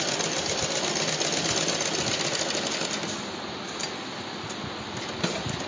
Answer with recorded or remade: recorded